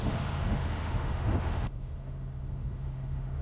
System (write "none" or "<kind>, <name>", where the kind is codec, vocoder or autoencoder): autoencoder, DAC-VAE